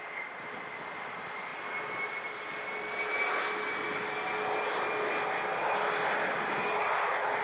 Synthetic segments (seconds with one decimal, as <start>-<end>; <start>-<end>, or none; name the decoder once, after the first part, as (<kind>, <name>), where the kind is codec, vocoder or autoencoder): none